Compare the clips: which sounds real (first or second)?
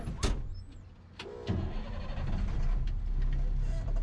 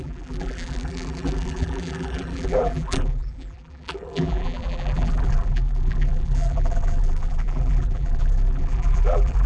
first